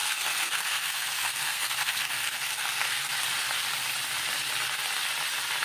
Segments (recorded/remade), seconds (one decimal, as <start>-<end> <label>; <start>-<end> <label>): 0.0-3.1 remade; 3.1-5.6 recorded